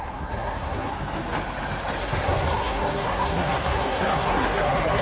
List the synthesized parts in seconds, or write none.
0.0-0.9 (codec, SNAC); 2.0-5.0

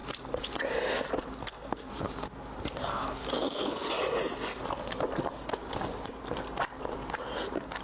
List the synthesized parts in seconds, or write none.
1.4-1.9 (codec, SNAC); 2.8-3.9

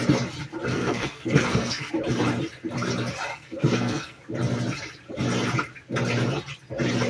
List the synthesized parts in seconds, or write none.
0.7-1.9 (codec, SNAC); 3.3-4.2

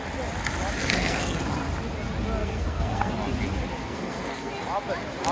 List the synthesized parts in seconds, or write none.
0.8-1.4 (codec, SNAC); 2.4-3.1; 3.8-4.5

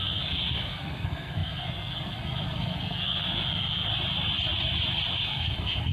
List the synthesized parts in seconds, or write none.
0.0-3.9 (codec, SNAC); 5.1-5.9

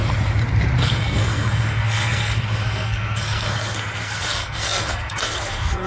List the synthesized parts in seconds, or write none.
0.9-5.9 (codec, SNAC)

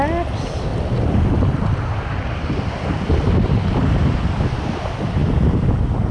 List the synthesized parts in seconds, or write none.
none